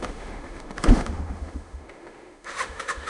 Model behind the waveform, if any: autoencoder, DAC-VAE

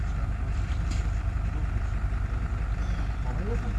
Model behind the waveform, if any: none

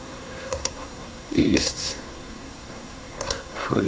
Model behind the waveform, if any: codec, SNAC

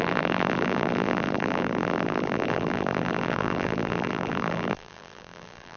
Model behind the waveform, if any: vocoder, BigVGAN v2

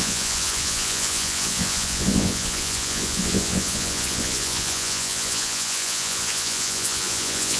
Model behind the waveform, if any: vocoder, Vocos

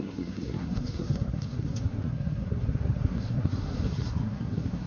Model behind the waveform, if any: codec, SNAC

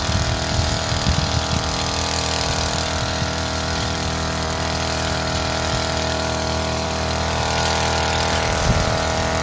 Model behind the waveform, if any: none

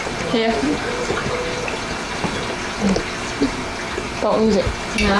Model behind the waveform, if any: none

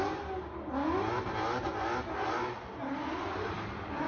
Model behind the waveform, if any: none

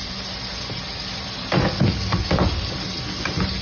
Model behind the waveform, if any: none